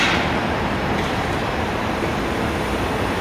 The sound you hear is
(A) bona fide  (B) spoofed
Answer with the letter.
A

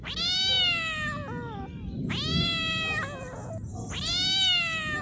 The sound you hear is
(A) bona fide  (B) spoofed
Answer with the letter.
A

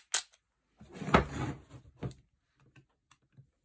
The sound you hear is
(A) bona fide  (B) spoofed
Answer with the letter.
A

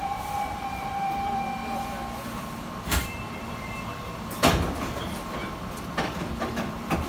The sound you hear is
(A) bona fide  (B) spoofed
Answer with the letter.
B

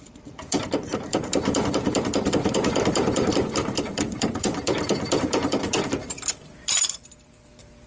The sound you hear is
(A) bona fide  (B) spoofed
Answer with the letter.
B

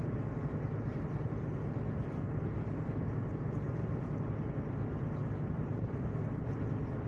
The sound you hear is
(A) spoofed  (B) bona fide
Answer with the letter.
B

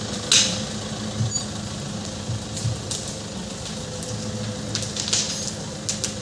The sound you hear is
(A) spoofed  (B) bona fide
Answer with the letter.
B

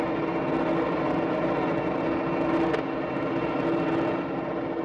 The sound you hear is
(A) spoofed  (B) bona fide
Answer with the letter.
B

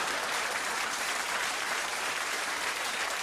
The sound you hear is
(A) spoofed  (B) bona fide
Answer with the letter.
A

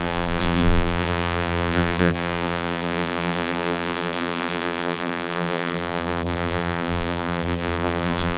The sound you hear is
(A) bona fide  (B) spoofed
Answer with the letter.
B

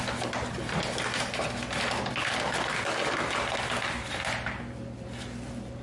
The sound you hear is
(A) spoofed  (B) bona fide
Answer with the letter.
B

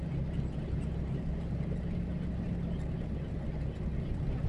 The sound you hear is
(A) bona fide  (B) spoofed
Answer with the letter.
A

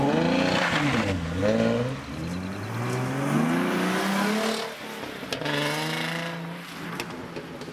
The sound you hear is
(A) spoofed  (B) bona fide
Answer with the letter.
B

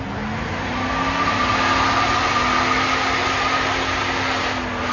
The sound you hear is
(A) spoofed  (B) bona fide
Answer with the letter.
B